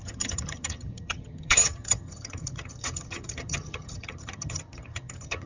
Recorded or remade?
remade